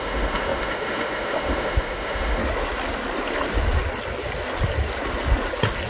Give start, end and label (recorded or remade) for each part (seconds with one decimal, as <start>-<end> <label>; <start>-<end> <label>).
0.0-2.4 remade; 2.4-5.9 recorded